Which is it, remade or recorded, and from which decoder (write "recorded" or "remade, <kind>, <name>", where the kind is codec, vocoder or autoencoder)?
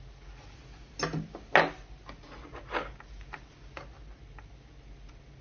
recorded